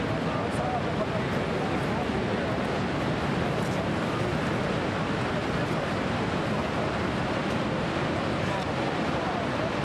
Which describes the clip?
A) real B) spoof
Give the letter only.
A